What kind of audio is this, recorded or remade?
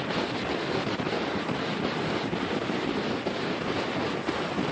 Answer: recorded